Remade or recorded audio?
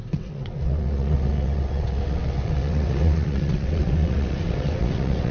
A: remade